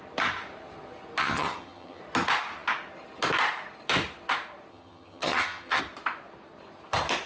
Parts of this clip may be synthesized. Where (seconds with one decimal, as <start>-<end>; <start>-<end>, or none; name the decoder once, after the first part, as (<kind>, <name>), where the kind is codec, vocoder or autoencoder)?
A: 1.2-2.0 (vocoder, HiFi-GAN); 4.7-5.8